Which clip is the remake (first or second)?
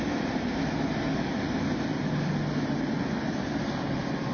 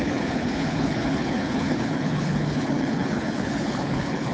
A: second